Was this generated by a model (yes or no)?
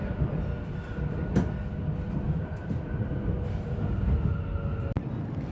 no